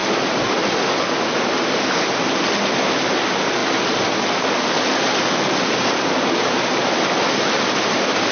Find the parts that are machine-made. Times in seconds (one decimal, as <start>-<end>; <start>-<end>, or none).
none